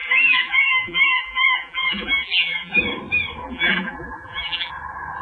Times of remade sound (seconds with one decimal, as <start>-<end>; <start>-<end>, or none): 0.0-2.8; 3.4-4.7